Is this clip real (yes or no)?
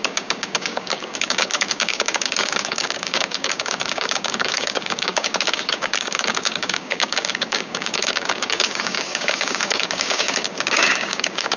no